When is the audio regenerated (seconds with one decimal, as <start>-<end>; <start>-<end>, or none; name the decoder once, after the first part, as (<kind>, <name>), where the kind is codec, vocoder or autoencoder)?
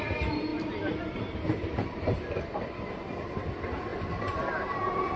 0.0-3.9 (vocoder, BigVGAN v2); 4.6-5.2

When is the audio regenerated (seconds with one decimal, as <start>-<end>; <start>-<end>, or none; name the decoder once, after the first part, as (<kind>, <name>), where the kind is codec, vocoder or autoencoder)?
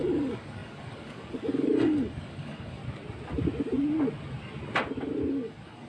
0.0-2.8 (codec, DAC); 5.3-5.9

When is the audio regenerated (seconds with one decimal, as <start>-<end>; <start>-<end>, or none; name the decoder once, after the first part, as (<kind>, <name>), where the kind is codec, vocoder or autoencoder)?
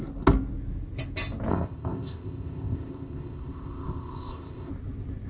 1.5-4.7 (codec, ZipCodec)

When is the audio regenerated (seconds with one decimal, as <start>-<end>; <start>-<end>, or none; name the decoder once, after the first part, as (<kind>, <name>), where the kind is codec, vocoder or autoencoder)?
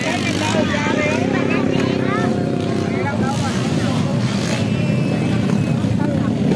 4.1-5.7 (vocoder, BigVGAN v2)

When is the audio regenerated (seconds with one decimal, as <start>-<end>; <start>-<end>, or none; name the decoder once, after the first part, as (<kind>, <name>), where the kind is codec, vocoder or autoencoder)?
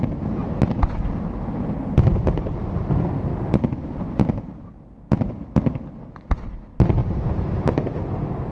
7.0-7.9 (vocoder, BigVGAN v2)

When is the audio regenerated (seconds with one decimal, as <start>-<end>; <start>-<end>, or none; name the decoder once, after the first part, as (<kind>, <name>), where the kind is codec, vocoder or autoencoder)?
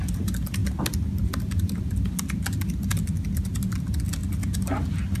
none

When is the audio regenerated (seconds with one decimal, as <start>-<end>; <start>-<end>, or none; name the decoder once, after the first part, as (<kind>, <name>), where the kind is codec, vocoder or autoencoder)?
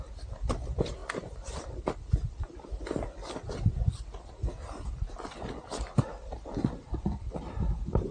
none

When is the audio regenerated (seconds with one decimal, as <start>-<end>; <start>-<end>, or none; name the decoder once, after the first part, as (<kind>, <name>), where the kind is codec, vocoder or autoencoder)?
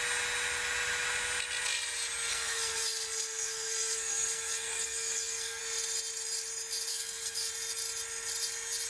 2.3-5.6 (codec, SNAC); 6.9-7.5